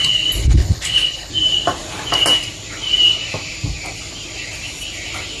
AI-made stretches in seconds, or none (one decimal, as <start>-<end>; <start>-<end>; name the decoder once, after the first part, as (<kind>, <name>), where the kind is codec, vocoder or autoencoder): 0.4-1.3 (codec, HILCodec)